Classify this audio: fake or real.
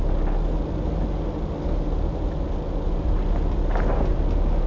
real